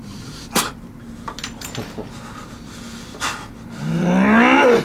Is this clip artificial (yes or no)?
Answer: no